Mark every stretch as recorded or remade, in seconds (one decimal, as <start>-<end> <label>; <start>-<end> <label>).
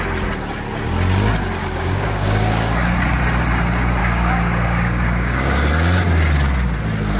0.0-1.6 recorded; 1.6-2.8 remade; 2.8-4.0 recorded; 4.0-5.7 remade; 5.7-7.2 recorded